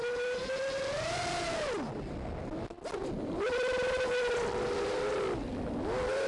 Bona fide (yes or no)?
yes